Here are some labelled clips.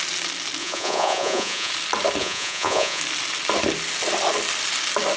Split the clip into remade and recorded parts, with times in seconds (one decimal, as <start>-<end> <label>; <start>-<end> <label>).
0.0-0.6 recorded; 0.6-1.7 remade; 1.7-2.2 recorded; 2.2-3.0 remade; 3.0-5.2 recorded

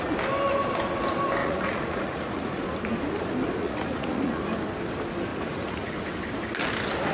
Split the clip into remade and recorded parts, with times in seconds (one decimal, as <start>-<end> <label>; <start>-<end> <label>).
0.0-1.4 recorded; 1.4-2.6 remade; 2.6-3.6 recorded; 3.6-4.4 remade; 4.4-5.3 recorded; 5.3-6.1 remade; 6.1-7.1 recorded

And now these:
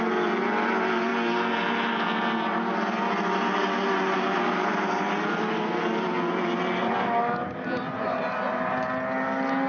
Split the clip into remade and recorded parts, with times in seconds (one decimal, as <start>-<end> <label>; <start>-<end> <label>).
0.0-9.7 recorded

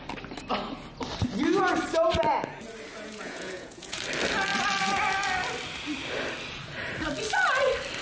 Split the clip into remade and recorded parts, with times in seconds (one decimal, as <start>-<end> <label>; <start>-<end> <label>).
0.0-2.9 recorded; 2.9-4.0 remade; 4.0-8.0 recorded

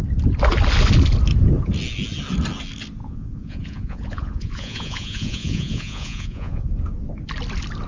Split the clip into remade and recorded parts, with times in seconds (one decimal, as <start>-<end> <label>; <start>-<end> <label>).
0.0-3.0 recorded; 3.0-6.7 remade; 6.7-7.9 recorded

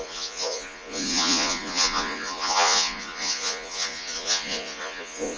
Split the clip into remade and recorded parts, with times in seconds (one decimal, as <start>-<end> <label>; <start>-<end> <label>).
0.0-5.4 remade

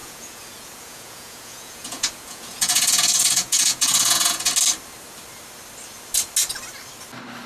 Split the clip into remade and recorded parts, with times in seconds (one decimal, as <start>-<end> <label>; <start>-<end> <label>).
0.0-4.5 remade; 4.5-7.5 recorded